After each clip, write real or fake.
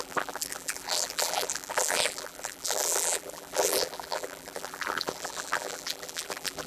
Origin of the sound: fake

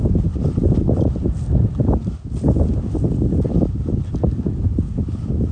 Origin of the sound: real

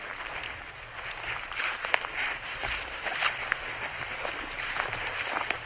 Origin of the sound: real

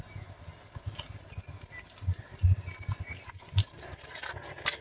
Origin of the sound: real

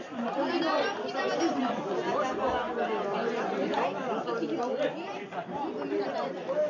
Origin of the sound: real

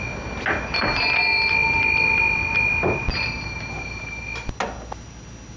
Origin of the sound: real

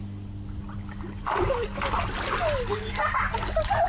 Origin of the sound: real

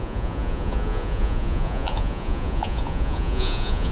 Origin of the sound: fake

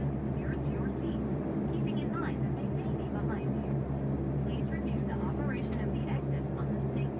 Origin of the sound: real